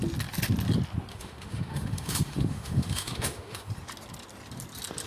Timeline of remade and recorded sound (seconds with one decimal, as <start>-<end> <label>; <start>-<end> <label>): 0.0-1.1 recorded; 1.1-3.7 remade; 3.7-5.1 recorded